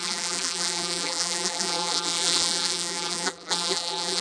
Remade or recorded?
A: remade